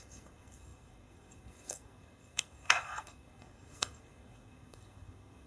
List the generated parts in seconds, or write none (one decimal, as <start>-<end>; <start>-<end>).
0.0-5.5